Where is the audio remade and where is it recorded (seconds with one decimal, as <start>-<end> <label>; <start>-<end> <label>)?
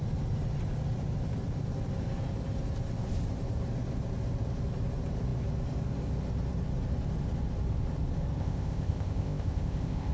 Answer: 0.0-8.4 recorded; 8.4-10.1 remade